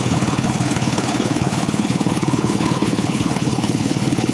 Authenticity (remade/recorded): remade